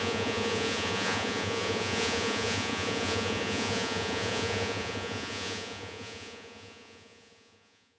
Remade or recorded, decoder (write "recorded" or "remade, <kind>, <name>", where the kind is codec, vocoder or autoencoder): remade, vocoder, Vocos